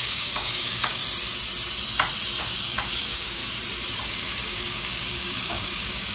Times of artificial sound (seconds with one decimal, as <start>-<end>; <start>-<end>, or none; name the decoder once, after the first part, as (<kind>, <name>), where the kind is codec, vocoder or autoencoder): 0.0-1.0 (codec, DAC); 2.4-3.4; 4.1-6.1